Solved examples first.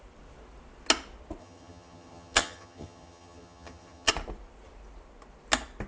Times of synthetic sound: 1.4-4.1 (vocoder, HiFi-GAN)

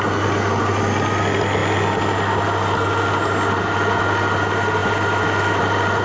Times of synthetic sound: none